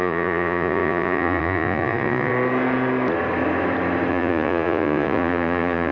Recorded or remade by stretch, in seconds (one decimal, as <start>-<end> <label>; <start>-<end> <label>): 0.0-2.3 remade; 2.3-4.1 recorded; 4.1-5.9 remade